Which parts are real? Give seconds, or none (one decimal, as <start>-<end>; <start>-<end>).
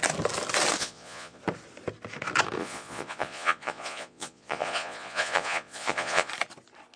0.0-0.8; 1.4-2.6; 6.3-7.0